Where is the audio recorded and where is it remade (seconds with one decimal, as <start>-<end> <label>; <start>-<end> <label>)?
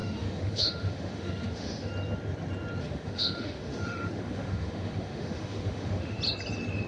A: 0.0-1.9 remade; 1.9-2.8 recorded; 2.8-6.2 remade; 6.2-6.9 recorded